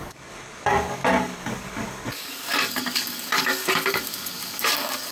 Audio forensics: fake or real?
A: fake